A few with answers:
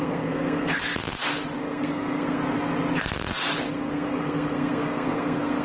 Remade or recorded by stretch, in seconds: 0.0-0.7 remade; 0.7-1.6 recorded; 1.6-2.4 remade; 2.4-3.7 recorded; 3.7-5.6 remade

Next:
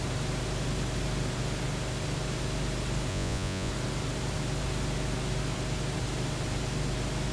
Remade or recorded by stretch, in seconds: 0.0-3.1 recorded; 3.1-3.7 remade; 3.7-7.3 recorded